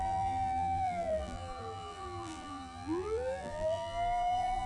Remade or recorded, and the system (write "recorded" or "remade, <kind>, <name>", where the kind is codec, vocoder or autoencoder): remade, vocoder, BigVGAN v2